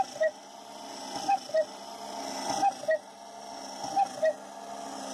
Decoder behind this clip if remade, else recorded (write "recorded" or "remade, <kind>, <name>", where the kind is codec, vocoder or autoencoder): recorded